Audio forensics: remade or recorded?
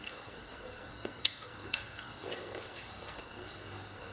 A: remade